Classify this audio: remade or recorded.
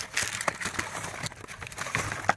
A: recorded